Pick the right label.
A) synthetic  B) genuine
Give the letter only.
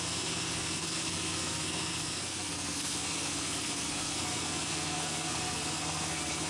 A